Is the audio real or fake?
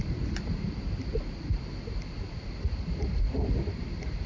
real